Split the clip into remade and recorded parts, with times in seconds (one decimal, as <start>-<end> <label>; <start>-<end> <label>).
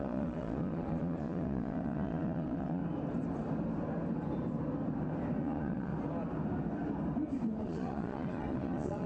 0.0-2.8 remade; 2.8-5.4 recorded; 5.4-5.9 remade; 5.9-7.6 recorded; 7.6-9.1 remade